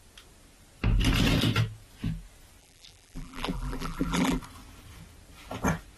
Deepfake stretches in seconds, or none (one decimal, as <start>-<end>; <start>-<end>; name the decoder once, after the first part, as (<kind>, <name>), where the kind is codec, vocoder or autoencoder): 2.6-4.4 (vocoder, BigVGAN v2)